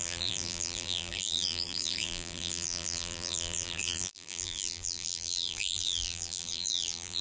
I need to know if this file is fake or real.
fake